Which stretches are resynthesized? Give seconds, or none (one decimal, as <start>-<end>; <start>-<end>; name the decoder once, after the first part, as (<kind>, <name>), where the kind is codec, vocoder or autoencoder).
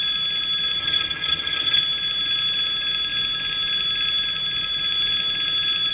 0.8-1.8 (vocoder, HiFi-GAN)